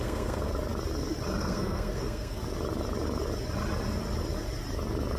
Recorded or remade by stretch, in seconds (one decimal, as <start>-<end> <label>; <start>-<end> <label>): 0.0-0.5 remade; 0.5-1.4 recorded; 1.4-2.4 remade; 2.4-5.2 recorded